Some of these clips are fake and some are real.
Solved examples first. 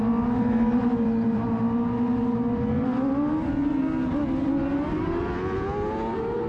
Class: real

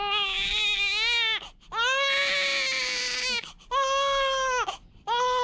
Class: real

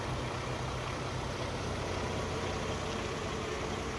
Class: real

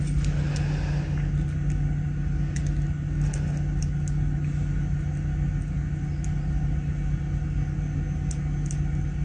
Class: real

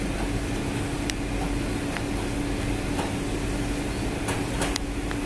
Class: real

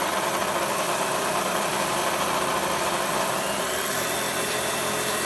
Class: real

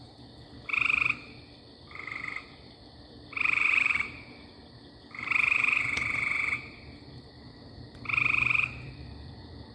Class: fake